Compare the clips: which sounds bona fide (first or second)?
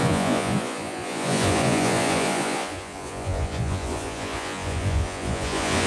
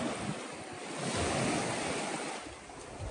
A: second